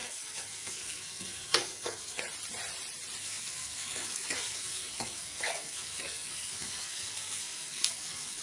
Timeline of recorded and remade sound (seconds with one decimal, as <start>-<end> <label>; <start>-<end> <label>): 0.0-2.2 remade; 2.2-3.2 recorded; 3.2-8.4 remade